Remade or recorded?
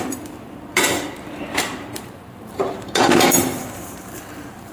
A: remade